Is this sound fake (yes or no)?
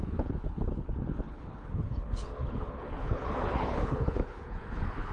yes